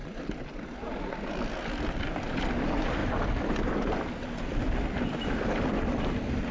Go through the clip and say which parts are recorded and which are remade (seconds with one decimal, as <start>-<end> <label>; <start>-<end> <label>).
0.0-6.5 recorded